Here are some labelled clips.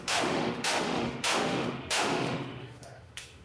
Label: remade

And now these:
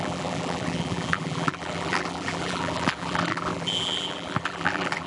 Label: remade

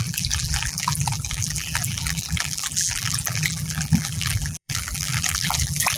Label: remade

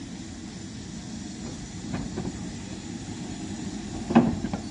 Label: recorded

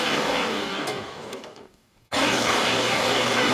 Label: remade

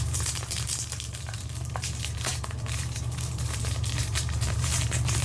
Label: remade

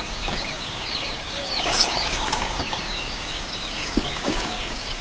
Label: remade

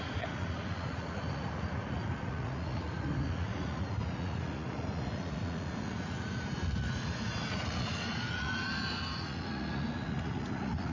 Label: remade